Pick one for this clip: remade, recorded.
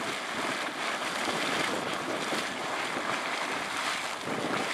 recorded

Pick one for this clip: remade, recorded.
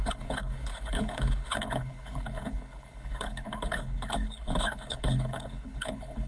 remade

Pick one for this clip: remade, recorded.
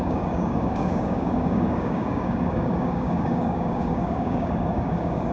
remade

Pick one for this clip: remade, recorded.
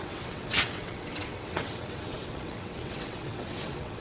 remade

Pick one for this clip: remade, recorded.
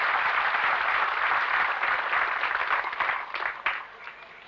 recorded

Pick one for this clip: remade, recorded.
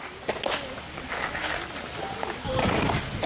recorded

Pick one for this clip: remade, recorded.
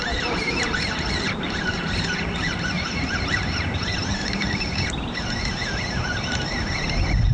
remade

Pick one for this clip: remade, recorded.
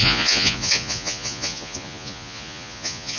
remade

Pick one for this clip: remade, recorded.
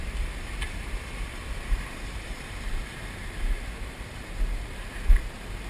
remade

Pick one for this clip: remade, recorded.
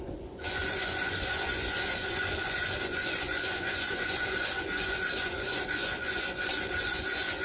remade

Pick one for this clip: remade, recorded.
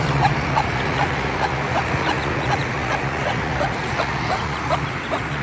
remade